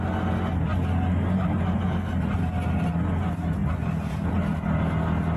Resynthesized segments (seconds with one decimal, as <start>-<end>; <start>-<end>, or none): none

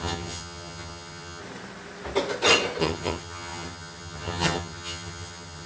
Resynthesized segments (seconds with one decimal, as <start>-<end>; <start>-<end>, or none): 0.0-1.4; 2.8-5.7

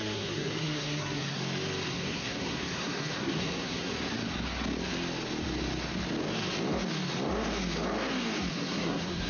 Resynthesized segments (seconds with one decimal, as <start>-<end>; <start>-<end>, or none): 0.0-1.4; 1.9-3.9; 8.5-9.3

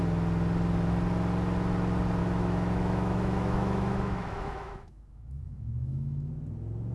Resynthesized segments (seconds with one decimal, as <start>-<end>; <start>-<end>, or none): 2.2-6.3

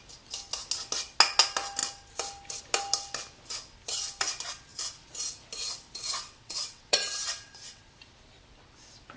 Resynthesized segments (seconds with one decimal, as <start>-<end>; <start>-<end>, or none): 6.2-7.8

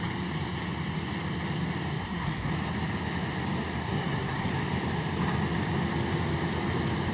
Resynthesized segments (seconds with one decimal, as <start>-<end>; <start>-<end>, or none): 1.9-2.5; 3.8-4.5

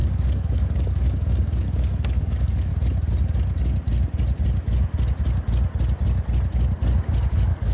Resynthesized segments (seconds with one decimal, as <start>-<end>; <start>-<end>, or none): 0.0-2.7; 7.3-7.7

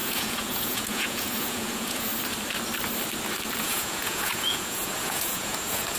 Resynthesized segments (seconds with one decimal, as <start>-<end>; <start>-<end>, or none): 0.0-2.1; 3.6-6.0